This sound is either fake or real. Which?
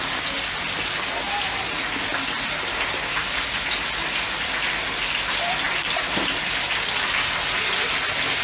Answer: real